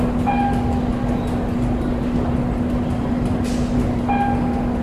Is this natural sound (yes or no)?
yes